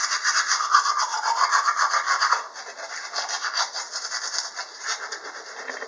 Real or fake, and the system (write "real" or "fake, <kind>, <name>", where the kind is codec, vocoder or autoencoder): real